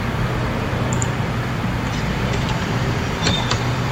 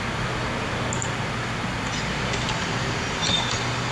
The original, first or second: second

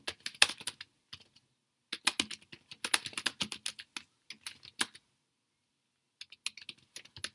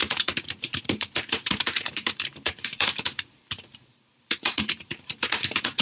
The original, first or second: first